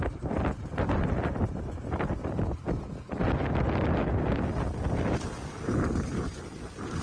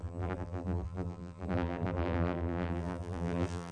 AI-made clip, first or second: second